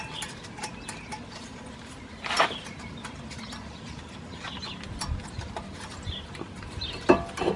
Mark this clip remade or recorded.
recorded